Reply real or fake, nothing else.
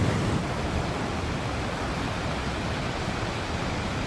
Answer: fake